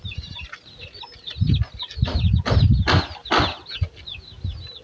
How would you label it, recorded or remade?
recorded